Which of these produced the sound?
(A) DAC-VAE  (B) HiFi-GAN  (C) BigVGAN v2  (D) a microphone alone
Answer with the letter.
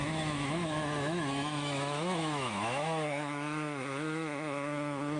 A